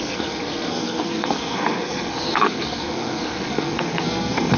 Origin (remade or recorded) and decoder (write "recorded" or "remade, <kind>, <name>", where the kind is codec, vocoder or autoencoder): remade, codec, SNAC